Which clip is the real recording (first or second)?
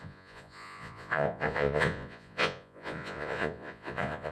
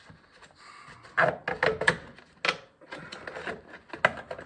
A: second